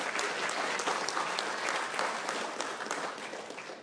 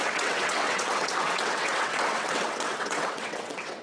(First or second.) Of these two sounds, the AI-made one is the second